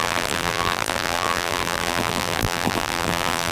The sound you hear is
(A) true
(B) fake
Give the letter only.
B